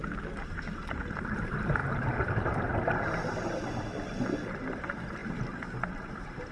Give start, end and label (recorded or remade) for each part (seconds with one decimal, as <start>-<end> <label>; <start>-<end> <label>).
0.0-6.5 recorded